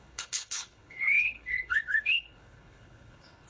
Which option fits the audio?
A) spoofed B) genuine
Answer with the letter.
A